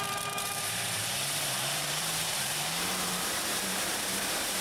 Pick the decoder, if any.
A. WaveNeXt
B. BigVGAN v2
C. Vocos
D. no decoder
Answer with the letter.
B